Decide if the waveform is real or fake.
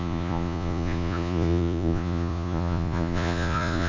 fake